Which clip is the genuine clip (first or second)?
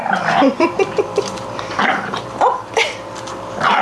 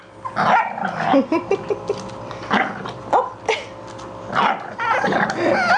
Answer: second